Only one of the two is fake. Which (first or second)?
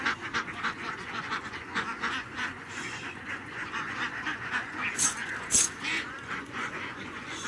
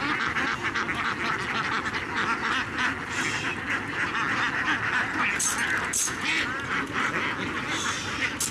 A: first